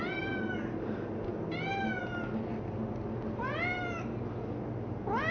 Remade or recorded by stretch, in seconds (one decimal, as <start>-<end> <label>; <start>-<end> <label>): 0.0-5.3 recorded